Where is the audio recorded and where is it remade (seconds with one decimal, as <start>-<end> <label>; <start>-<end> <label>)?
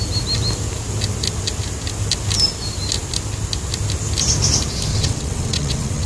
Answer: 0.0-4.9 recorded; 4.9-6.1 remade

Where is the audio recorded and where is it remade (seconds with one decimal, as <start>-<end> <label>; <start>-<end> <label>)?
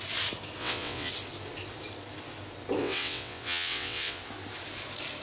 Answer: 0.0-0.6 recorded; 0.6-1.1 remade; 1.1-2.8 recorded; 2.8-4.2 remade; 4.2-5.2 recorded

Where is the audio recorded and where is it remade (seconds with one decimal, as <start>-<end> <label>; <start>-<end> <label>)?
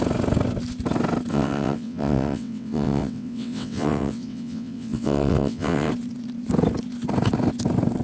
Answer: 0.0-1.3 recorded; 1.3-5.9 remade; 5.9-8.0 recorded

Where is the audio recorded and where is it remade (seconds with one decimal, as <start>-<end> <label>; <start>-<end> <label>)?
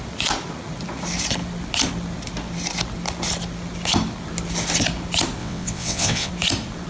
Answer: 0.0-5.4 recorded; 5.4-6.3 remade; 6.3-6.9 recorded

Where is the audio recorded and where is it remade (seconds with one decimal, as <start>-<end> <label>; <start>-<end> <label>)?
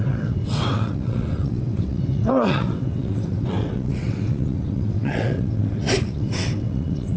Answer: 0.0-7.2 remade